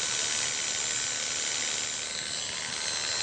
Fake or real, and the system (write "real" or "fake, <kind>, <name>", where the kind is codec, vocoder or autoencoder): real